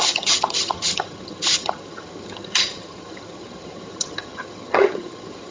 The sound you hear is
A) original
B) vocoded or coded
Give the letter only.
B